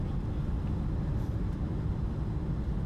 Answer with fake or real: real